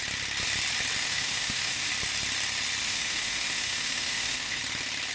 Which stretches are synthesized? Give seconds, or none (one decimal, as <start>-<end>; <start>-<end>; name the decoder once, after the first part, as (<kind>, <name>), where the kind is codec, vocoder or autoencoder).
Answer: 1.0-1.9 (autoencoder, DAC-VAE); 2.8-4.6